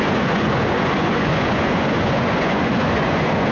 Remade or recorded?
remade